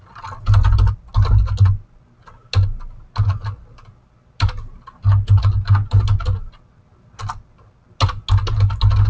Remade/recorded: recorded